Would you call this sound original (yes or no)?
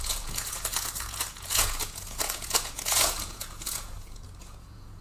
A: no